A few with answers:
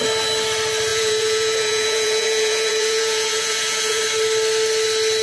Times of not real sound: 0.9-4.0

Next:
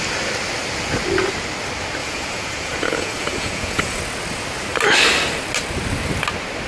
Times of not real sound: 2.0-4.0